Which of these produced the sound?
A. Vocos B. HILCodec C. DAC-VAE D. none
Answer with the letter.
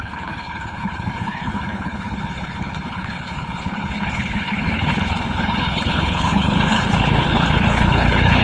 B